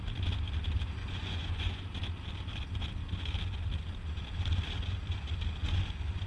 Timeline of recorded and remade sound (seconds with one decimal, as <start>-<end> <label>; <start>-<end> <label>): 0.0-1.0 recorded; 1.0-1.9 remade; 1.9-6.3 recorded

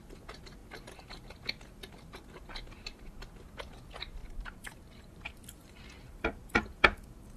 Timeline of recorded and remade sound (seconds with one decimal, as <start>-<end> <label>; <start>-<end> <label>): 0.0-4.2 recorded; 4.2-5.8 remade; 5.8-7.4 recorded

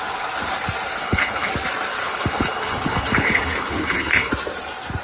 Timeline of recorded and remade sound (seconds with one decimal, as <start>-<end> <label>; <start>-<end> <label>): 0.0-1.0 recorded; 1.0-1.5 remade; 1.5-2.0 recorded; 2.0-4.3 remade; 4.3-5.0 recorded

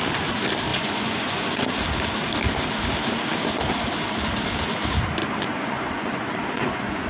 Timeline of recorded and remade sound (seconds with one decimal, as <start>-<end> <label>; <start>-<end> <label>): 0.0-0.7 recorded; 0.7-1.6 remade; 1.6-5.2 recorded; 5.2-7.1 remade